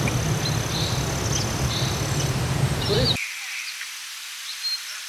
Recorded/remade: recorded